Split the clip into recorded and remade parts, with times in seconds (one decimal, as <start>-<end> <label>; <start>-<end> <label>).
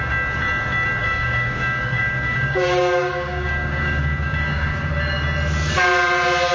0.0-1.0 recorded; 1.0-4.9 remade; 4.9-6.5 recorded